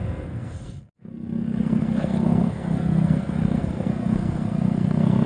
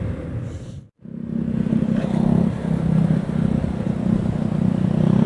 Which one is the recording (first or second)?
second